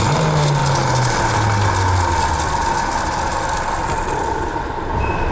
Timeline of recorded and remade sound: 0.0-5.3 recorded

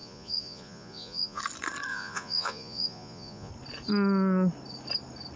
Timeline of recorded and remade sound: 0.0-1.4 remade; 1.4-1.9 recorded; 1.9-3.5 remade; 3.5-5.4 recorded

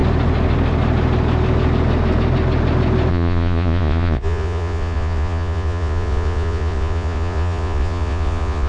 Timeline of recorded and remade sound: 0.0-3.1 recorded; 3.1-8.7 remade

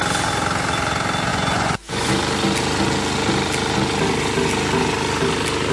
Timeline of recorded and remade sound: 0.0-1.3 recorded; 1.3-2.1 remade; 2.1-5.7 recorded

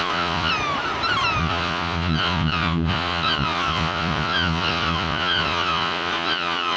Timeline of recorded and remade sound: 0.0-0.5 remade; 0.5-1.4 recorded; 1.4-6.8 remade

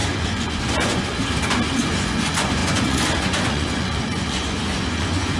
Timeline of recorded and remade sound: 0.0-1.2 remade; 1.2-1.8 recorded; 1.8-5.4 remade